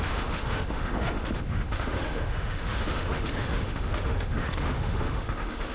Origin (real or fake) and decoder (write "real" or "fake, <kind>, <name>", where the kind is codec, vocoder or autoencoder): fake, autoencoder, DAC-VAE